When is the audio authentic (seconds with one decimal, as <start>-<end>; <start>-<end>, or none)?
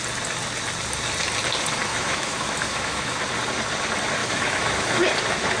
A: 0.0-1.9; 3.2-4.2; 5.0-5.6